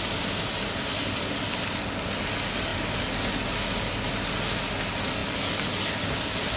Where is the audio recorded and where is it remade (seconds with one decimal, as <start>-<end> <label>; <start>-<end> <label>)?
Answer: 0.0-6.6 recorded